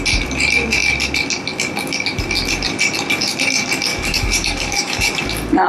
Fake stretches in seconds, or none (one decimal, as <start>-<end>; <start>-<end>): 3.9-5.2